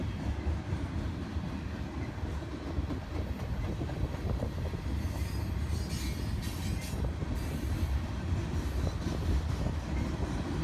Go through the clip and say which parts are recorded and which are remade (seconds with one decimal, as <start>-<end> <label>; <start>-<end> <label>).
0.0-10.6 recorded